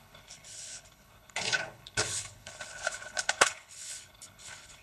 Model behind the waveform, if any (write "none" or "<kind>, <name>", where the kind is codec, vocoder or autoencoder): codec, HILCodec